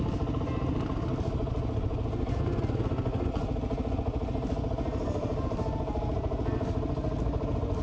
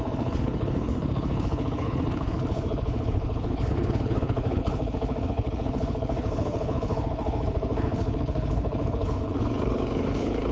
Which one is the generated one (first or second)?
second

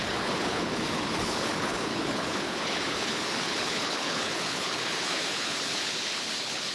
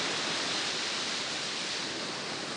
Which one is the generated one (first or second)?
first